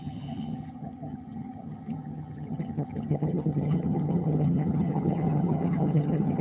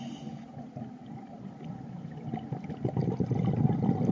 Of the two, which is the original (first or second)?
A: second